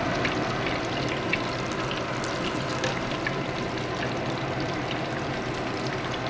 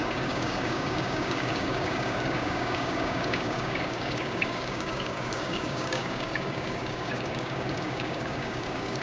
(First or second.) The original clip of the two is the first